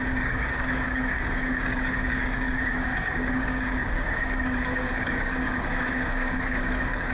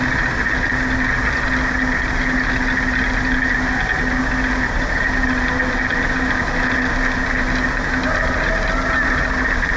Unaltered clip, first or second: second